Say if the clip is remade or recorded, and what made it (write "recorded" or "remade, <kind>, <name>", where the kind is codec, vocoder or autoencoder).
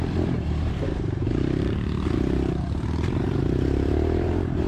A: remade, vocoder, BigVGAN v2